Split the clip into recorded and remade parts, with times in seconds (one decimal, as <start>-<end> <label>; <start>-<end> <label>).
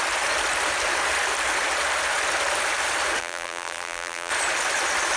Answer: 0.0-3.2 recorded; 3.2-4.3 remade; 4.3-5.2 recorded